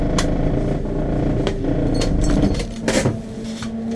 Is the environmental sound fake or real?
real